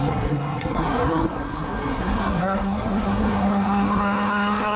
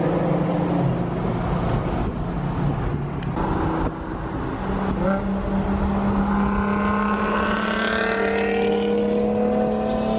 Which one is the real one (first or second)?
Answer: second